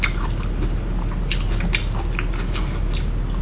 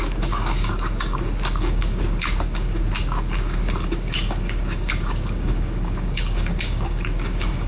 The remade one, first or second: second